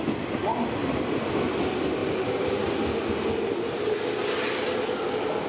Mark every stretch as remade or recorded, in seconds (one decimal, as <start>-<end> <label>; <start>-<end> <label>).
0.0-5.5 recorded